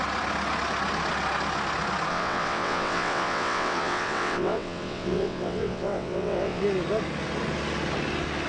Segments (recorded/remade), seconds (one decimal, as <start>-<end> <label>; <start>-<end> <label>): 0.0-2.1 recorded; 2.1-6.6 remade; 6.6-8.5 recorded